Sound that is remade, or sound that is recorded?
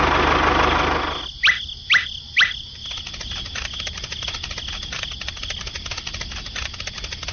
recorded